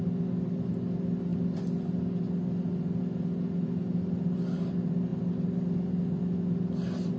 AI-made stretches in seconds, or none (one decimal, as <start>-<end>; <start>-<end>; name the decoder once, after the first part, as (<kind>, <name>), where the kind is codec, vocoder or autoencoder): none